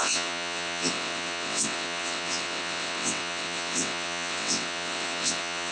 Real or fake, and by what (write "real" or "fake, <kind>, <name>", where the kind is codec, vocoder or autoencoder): fake, vocoder, WaveNeXt